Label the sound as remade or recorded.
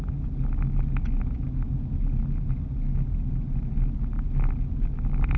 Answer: recorded